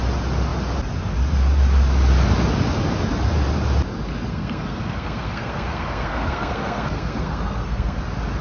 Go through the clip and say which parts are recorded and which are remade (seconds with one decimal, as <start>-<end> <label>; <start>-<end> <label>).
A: 0.0-4.3 recorded; 4.3-8.0 remade; 8.0-8.4 recorded